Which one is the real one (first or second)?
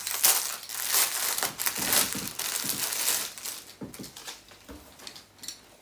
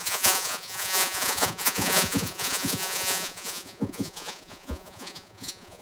first